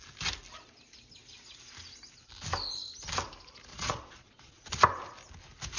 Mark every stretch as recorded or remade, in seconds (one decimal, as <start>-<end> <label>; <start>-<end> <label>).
0.0-3.7 recorded; 3.7-4.6 remade; 4.6-5.8 recorded